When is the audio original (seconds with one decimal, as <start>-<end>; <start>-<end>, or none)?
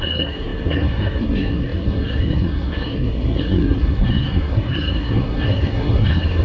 none